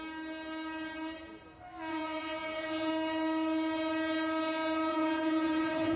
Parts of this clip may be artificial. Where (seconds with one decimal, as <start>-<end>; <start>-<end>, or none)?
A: 1.9-2.9; 4.9-6.0